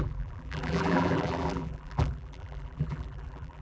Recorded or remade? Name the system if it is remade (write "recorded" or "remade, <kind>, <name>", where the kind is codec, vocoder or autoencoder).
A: remade, vocoder, BigVGAN v2